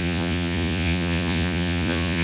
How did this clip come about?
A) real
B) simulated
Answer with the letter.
B